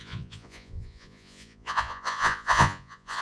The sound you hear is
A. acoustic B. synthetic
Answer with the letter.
B